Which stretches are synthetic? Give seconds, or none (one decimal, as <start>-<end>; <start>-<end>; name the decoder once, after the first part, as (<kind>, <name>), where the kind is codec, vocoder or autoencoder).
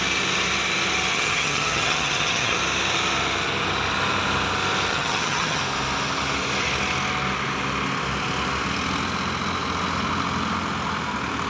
1.1-2.6 (vocoder, HiFi-GAN); 4.9-5.6